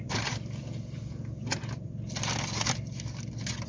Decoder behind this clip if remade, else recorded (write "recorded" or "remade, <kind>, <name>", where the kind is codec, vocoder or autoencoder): recorded